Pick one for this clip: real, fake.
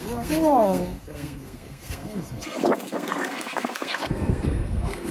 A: fake